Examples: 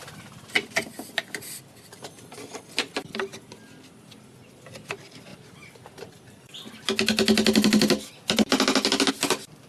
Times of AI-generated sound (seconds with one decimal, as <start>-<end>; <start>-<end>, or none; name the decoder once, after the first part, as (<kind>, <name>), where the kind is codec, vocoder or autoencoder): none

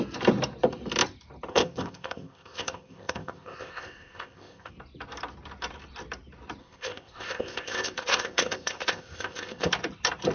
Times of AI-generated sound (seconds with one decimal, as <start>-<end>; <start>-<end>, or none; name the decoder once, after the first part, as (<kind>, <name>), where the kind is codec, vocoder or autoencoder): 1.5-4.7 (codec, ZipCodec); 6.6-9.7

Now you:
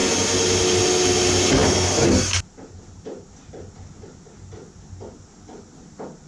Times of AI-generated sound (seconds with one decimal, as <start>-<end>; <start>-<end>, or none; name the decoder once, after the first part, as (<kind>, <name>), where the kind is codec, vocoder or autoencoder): none

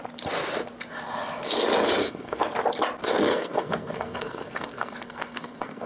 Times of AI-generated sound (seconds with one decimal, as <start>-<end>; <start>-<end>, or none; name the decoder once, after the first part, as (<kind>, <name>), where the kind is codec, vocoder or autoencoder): 2.0-2.5 (codec, SNAC); 3.0-5.9

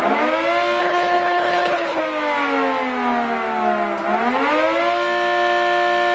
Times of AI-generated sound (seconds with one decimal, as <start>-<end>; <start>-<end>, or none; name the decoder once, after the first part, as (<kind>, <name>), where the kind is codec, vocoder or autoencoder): 0.8-2.0 (codec, HILCodec)

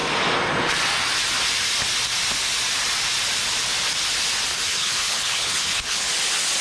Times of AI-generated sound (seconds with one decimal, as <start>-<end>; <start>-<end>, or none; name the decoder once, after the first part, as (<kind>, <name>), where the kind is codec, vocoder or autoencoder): 4.7-6.1 (codec, HILCodec)

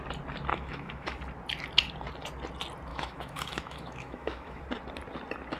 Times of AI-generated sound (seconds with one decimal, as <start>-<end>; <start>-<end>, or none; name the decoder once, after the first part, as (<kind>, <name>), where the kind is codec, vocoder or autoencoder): 0.5-1.2 (autoencoder, DAC-VAE); 2.9-4.6

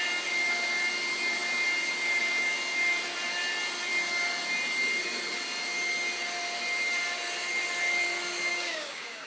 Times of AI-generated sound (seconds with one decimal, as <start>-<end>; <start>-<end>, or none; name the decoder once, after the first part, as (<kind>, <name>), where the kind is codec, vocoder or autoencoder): 8.5-9.3 (codec, DAC)